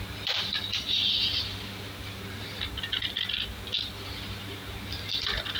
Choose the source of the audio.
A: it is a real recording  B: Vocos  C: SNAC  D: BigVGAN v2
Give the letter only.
A